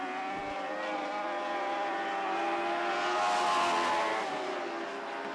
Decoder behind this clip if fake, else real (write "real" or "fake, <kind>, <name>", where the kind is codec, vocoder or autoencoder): real